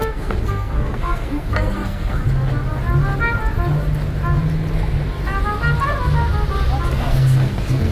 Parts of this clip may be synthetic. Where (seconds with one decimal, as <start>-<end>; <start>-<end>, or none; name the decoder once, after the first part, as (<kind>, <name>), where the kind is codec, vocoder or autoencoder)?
0.0-2.2 (codec, SNAC); 6.9-7.9